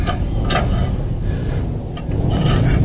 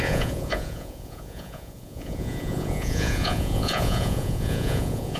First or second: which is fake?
second